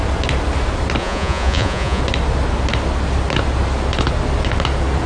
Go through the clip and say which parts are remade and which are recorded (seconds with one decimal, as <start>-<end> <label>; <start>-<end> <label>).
0.0-1.0 recorded; 1.0-2.0 remade; 2.0-5.1 recorded